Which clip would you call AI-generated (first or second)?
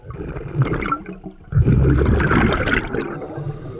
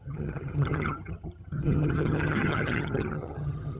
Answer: second